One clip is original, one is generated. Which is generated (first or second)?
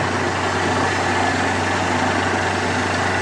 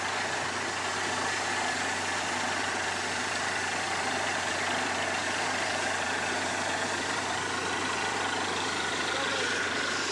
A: second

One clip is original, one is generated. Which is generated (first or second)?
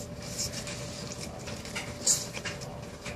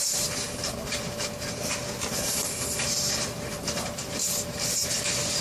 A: second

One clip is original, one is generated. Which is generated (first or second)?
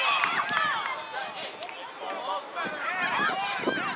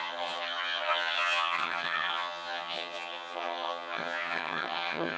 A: second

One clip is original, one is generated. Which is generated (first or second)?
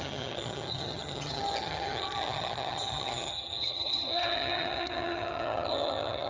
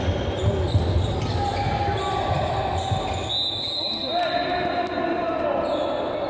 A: first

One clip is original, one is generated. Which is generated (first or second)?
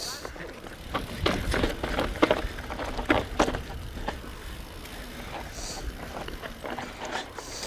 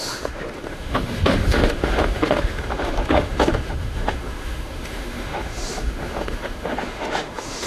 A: second